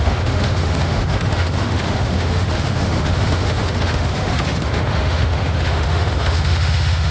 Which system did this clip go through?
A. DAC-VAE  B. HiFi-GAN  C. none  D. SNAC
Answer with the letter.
A